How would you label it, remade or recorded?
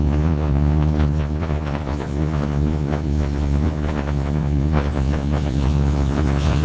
remade